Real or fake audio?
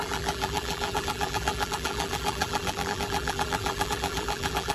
fake